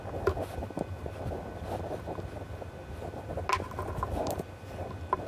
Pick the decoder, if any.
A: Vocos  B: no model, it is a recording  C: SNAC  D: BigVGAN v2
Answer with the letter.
B